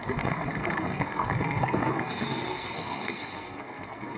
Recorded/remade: remade